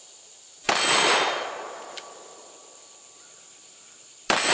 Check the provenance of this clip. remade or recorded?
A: recorded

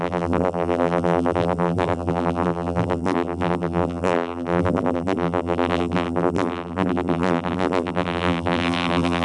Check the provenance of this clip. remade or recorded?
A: remade